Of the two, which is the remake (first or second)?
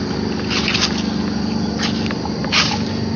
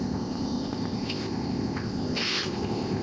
second